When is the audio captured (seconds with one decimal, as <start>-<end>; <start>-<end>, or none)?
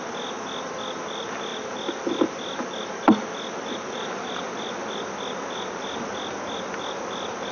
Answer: 0.0-7.5